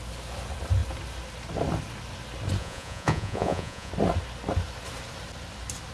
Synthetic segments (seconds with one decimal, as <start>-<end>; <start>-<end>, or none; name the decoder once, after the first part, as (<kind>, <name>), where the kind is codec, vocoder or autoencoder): 2.6-3.9 (vocoder, Vocos)